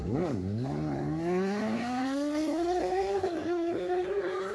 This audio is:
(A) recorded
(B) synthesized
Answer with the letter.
B